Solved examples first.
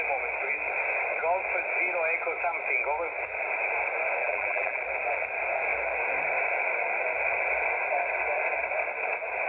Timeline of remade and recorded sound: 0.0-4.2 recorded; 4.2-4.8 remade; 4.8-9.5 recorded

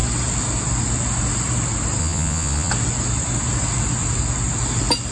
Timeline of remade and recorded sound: 0.0-2.0 recorded; 2.0-2.7 remade; 2.7-5.1 recorded

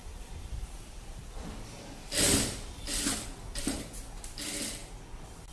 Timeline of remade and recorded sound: 0.0-3.3 remade; 3.3-5.5 recorded

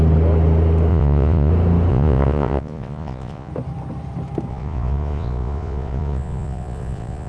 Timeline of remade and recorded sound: 0.0-0.9 recorded; 0.9-1.5 remade; 1.5-1.9 recorded; 1.9-3.5 remade; 3.5-4.5 recorded; 4.5-7.3 remade